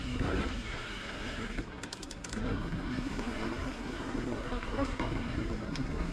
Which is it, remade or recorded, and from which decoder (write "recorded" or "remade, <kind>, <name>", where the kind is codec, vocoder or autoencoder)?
remade, codec, SNAC